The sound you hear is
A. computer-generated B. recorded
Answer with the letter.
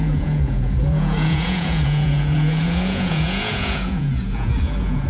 A